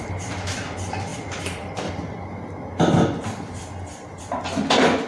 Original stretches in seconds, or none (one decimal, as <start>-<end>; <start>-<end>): 0.0-5.1